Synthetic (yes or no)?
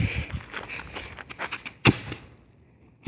no